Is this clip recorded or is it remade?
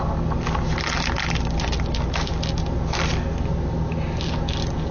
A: recorded